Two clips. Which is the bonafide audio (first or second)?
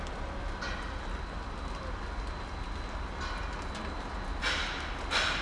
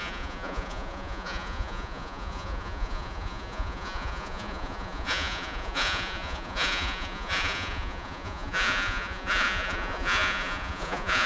first